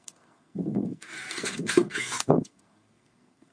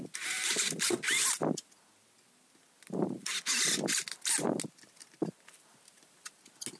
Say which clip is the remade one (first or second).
first